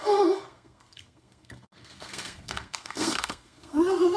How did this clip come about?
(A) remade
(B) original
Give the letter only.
A